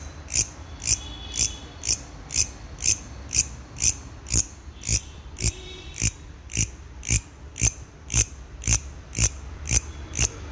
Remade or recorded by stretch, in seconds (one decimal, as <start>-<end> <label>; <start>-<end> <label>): 0.0-4.9 recorded; 4.9-10.1 remade; 10.1-10.5 recorded